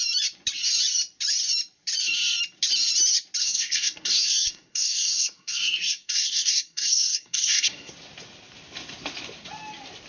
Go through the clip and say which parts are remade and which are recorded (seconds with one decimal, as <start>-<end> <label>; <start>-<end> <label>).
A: 0.0-3.4 recorded; 3.4-7.9 remade; 7.9-10.1 recorded